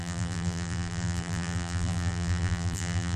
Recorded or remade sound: remade